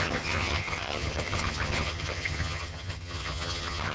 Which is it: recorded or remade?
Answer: remade